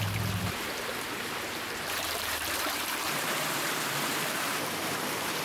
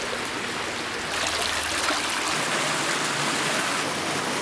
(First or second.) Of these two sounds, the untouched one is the second